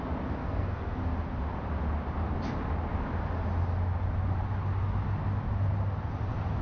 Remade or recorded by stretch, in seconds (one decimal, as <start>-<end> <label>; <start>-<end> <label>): 0.0-0.4 recorded; 0.4-1.0 remade; 1.0-6.6 recorded